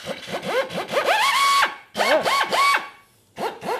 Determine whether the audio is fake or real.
real